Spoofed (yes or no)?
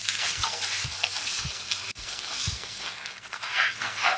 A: yes